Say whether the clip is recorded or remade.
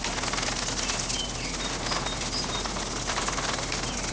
recorded